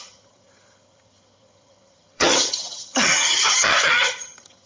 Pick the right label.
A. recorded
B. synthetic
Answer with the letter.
B